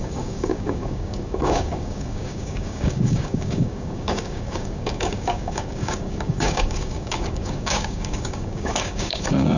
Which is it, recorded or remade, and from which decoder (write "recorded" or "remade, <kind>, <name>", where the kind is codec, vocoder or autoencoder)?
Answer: remade, codec, DAC